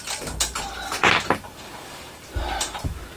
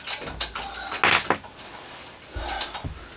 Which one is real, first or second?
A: second